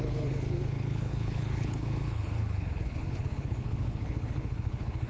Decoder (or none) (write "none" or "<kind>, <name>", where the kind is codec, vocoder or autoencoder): codec, HILCodec